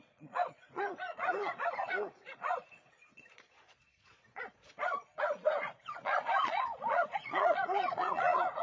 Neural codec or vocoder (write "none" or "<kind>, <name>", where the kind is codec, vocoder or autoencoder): vocoder, Vocos